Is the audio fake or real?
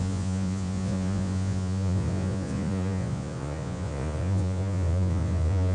fake